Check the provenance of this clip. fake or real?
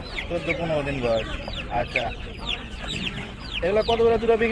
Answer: fake